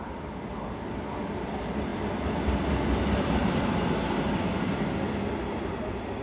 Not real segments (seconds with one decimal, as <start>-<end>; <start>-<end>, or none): none